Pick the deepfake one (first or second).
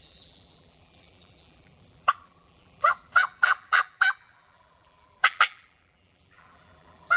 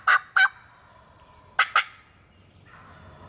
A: first